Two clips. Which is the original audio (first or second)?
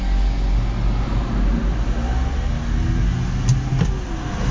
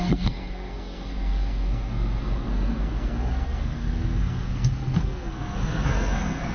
first